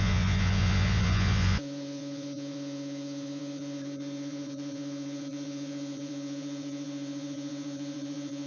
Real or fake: fake